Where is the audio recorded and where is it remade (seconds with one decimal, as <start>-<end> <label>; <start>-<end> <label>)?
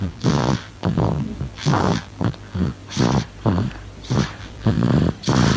0.0-2.8 remade; 2.8-4.4 recorded; 4.4-4.9 remade; 4.9-5.6 recorded